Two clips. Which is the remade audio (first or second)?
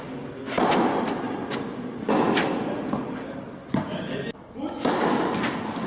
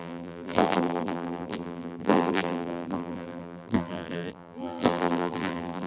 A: second